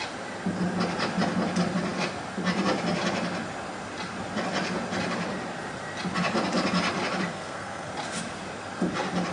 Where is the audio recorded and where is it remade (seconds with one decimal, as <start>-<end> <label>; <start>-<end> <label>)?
0.0-7.3 recorded; 7.3-7.9 remade; 7.9-9.3 recorded